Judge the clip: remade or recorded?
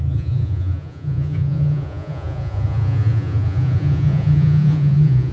remade